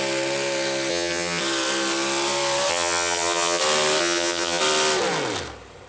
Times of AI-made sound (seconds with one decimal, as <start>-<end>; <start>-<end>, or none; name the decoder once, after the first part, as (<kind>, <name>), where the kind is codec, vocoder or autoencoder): 0.9-1.4 (vocoder, HiFi-GAN); 2.7-3.6; 4.0-4.6